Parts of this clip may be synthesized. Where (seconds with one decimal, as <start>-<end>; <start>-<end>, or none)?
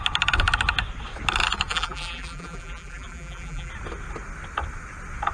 1.7-3.7